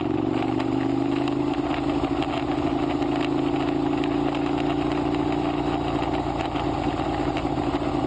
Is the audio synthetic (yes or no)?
no